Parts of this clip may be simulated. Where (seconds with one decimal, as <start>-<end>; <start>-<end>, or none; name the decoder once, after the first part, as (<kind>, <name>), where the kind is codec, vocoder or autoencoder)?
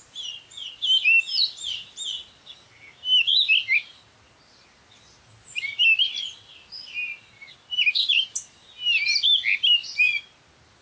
none